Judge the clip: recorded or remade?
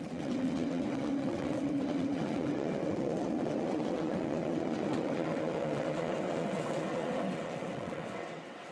remade